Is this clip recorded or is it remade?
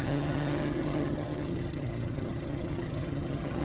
remade